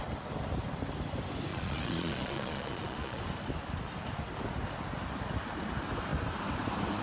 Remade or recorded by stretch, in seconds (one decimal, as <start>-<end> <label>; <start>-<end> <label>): 0.0-1.5 recorded; 1.5-3.2 remade; 3.2-7.0 recorded